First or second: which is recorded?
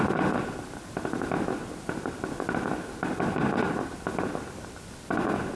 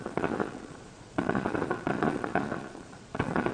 first